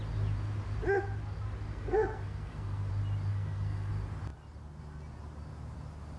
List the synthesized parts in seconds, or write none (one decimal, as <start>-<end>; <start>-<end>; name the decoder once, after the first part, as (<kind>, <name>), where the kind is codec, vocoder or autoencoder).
1.7-2.9 (codec, SNAC); 3.3-3.9